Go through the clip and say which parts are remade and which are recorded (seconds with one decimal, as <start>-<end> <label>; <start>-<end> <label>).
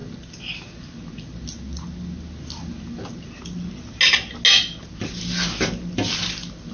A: 0.0-6.7 recorded